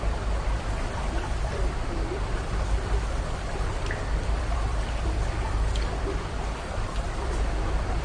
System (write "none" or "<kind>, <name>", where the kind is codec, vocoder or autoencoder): vocoder, BigVGAN v2